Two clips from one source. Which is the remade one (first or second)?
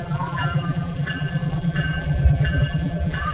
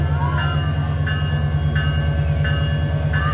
first